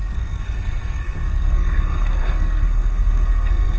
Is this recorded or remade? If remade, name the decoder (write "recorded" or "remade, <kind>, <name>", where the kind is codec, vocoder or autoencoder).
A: remade, codec, SNAC